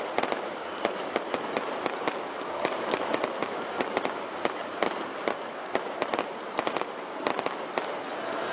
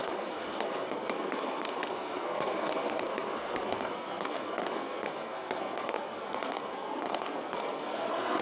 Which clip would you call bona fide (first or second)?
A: first